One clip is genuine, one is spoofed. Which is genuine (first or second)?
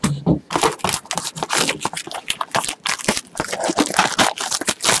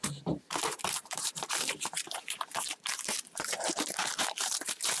first